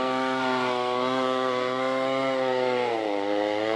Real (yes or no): no